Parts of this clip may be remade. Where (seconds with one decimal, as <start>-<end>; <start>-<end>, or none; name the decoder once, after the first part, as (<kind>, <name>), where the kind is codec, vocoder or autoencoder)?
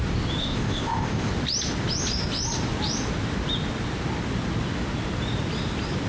0.4-1.3 (codec, ZipCodec)